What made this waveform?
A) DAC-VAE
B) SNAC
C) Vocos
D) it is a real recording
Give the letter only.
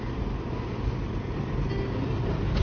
D